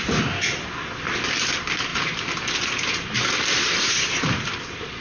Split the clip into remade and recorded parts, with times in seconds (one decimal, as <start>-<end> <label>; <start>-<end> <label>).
0.0-5.0 recorded

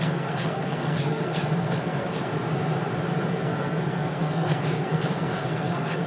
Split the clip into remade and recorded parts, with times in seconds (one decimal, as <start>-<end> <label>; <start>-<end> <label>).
0.0-2.3 remade; 2.3-3.3 recorded; 3.3-6.1 remade

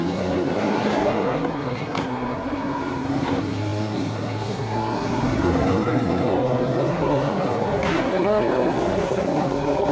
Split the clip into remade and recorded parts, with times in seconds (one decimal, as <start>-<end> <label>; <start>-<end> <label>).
0.0-9.9 remade

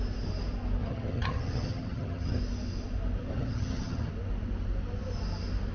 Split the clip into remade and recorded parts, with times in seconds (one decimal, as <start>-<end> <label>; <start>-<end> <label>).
0.0-0.8 recorded; 0.8-2.4 remade; 2.4-3.3 recorded; 3.3-4.1 remade; 4.1-5.7 recorded

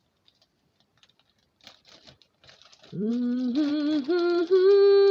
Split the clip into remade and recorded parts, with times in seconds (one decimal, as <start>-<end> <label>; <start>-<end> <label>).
0.0-3.1 remade; 3.1-5.1 recorded

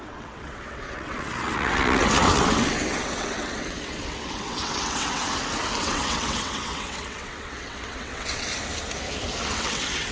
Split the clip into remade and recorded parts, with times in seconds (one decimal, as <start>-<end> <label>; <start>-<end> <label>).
0.0-5.2 remade; 5.2-5.8 recorded; 5.8-8.5 remade; 8.5-9.4 recorded; 9.4-10.1 remade